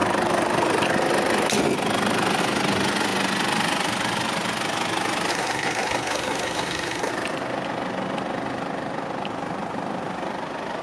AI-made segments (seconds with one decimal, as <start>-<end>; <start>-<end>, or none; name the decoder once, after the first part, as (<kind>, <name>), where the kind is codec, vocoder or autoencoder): 5.3-7.1 (codec, SNAC)